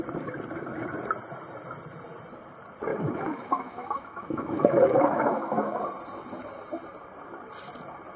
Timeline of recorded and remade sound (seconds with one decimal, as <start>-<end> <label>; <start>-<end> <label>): 0.0-2.9 recorded; 2.9-5.8 remade; 5.8-8.2 recorded